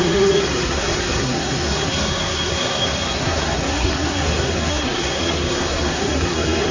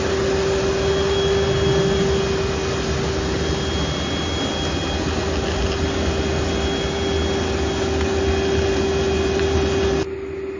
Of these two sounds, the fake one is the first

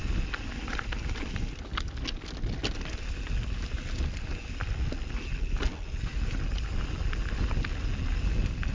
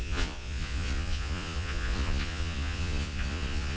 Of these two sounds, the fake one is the second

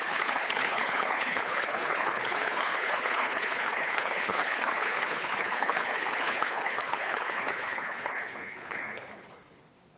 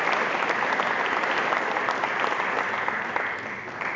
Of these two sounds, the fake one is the first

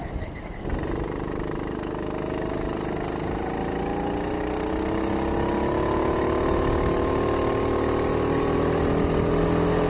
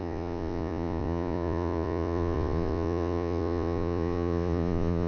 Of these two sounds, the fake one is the second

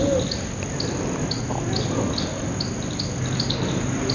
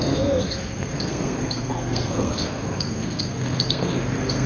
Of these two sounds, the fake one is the second